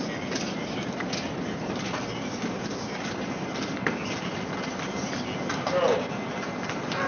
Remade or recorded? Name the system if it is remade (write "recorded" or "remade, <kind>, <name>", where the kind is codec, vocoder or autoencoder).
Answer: recorded